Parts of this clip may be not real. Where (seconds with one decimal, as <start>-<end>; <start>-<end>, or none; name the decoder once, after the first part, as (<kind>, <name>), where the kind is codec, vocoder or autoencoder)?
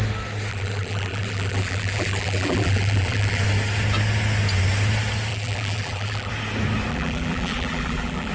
0.5-3.4 (vocoder, BigVGAN v2); 5.3-6.3; 6.9-8.3